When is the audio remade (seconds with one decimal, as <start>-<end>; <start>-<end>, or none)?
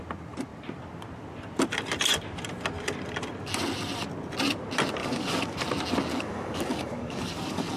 5.0-5.6; 6.1-7.8